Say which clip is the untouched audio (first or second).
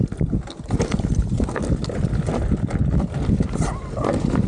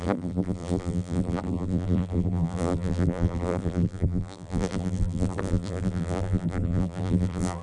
first